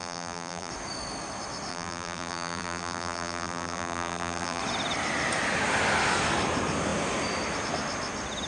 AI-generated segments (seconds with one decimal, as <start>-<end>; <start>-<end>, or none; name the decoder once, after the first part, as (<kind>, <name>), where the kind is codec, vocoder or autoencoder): 0.0-0.7 (vocoder, BigVGAN v2); 1.7-4.6